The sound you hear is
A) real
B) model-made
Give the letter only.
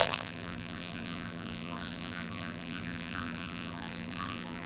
B